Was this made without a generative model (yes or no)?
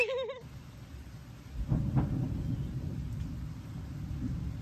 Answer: yes